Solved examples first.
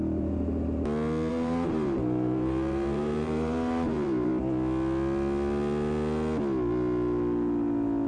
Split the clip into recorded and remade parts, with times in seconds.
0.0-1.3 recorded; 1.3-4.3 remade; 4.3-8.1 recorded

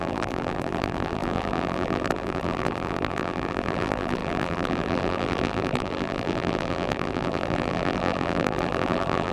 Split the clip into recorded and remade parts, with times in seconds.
0.0-9.3 remade

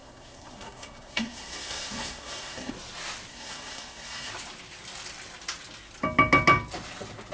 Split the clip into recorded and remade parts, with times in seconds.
0.0-2.7 remade; 2.7-3.3 recorded; 3.3-4.3 remade; 4.3-7.3 recorded

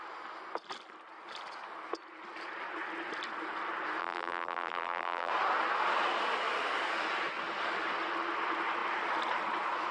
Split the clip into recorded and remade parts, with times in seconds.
0.0-4.0 recorded; 4.0-5.3 remade; 5.3-9.9 recorded